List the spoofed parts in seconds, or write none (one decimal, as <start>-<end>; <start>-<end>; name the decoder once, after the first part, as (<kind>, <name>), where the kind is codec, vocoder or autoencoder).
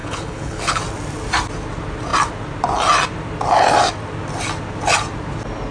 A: 0.0-0.8 (codec, HILCodec)